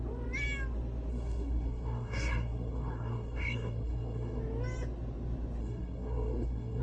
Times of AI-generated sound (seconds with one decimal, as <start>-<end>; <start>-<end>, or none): 1.1-4.4; 5.6-6.8